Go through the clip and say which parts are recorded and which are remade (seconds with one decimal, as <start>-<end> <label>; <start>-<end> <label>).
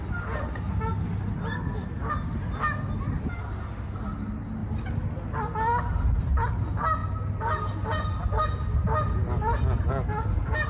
0.0-10.7 recorded